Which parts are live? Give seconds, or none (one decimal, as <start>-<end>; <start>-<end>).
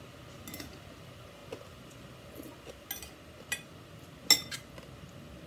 0.0-5.5